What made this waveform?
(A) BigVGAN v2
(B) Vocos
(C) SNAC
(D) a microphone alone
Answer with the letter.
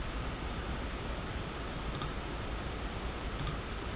D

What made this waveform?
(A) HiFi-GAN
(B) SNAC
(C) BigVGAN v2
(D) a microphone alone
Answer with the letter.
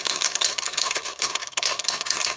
B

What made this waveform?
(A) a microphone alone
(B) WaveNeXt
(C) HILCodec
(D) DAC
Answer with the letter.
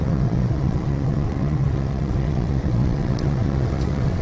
B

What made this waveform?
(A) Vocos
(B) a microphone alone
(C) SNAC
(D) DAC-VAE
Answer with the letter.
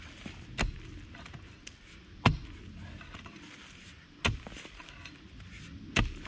B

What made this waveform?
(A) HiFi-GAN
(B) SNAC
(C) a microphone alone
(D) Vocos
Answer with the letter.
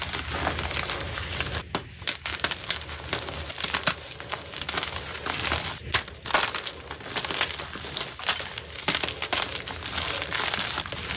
C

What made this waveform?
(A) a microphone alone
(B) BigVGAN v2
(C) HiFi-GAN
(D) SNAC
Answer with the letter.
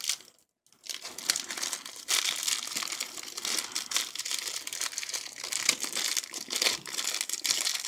A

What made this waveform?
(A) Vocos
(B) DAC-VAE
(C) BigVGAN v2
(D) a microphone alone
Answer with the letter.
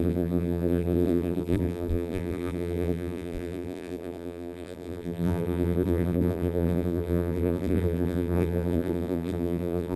C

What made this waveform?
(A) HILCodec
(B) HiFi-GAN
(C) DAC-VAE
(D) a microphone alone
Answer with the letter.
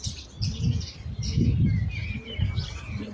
D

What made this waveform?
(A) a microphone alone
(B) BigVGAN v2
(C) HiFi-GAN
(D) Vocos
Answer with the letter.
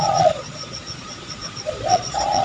D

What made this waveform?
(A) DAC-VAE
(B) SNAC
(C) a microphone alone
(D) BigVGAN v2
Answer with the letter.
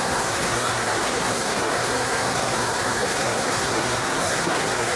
B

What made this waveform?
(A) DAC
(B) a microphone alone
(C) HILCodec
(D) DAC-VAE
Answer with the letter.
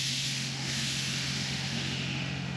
D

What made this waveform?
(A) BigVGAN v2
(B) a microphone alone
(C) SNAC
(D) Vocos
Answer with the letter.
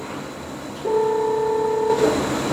B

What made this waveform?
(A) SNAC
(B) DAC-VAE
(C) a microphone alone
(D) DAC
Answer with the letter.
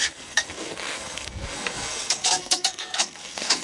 A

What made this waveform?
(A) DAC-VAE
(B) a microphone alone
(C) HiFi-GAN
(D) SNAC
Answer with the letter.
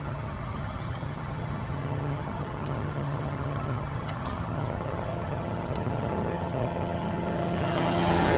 C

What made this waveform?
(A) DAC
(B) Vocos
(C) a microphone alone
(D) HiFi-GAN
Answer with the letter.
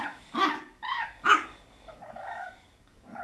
A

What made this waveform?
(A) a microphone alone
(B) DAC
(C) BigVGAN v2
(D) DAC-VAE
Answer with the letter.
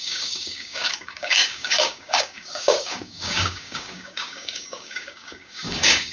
B